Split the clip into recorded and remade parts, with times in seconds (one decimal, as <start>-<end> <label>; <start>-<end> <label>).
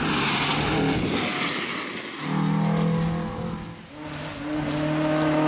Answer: 0.0-5.5 recorded